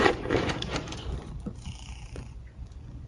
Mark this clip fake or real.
fake